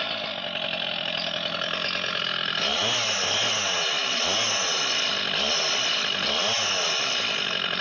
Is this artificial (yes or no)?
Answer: no